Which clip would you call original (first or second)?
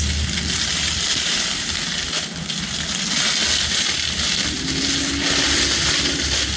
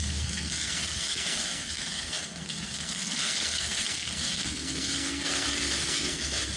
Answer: first